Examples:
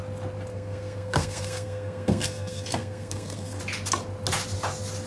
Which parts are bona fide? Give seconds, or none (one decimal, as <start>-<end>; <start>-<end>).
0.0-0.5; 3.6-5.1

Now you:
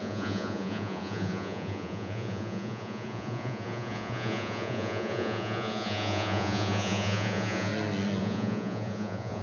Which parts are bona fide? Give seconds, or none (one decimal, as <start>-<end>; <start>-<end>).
7.7-8.2

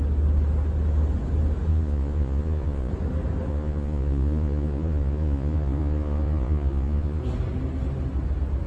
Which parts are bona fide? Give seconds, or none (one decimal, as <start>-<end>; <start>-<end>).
0.0-1.7; 2.9-3.5; 7.2-8.7

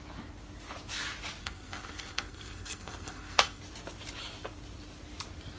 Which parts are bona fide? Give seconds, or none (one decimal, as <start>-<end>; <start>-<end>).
0.0-1.4; 3.6-5.6